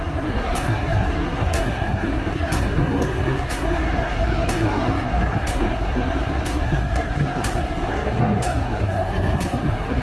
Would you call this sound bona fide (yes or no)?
no